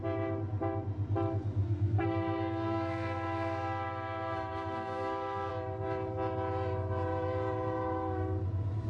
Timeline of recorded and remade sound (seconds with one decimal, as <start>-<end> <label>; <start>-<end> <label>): 0.0-1.6 recorded; 1.6-5.5 remade; 5.5-8.9 recorded